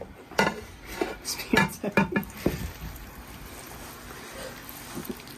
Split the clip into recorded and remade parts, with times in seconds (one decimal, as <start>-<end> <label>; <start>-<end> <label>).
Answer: 0.0-5.4 recorded